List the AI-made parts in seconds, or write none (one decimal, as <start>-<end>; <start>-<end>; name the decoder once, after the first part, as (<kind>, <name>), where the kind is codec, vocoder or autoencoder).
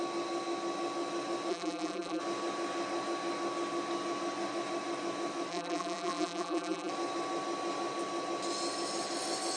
1.5-2.2 (vocoder, BigVGAN v2); 5.5-6.9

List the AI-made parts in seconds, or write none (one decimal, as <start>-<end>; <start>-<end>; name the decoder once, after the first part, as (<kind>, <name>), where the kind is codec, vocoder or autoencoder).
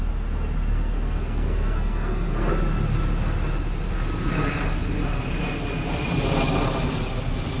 0.7-2.5 (codec, SNAC)